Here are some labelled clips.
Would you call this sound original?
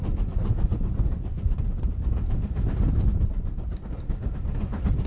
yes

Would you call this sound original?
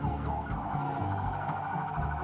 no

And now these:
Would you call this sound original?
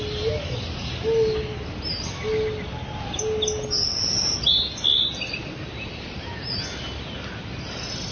yes